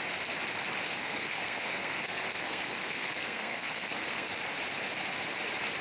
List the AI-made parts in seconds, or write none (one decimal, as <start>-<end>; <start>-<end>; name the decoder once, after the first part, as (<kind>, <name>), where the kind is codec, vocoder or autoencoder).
0.9-4.3 (codec, SNAC)